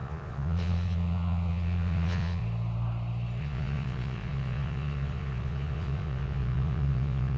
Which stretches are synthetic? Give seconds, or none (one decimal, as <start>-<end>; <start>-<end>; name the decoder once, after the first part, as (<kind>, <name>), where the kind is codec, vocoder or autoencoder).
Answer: 0.0-2.4 (vocoder, Vocos); 3.4-7.4